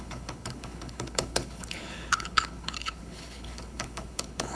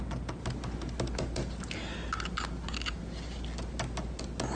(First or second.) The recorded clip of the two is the second